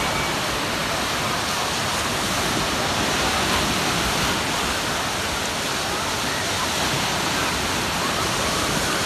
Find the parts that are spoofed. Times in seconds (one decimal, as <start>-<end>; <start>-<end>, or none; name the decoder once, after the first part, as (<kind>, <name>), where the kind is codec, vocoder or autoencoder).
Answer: none